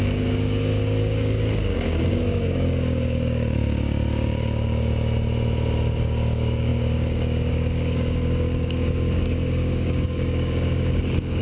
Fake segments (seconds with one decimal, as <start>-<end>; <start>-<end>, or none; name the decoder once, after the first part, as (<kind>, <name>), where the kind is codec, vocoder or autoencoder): 0.0-4.9 (codec, DAC); 6.0-11.4